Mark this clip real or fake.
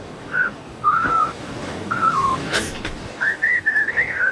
fake